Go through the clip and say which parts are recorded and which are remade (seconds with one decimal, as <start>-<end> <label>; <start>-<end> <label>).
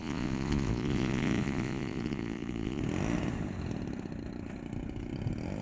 0.0-2.8 remade; 2.8-5.6 recorded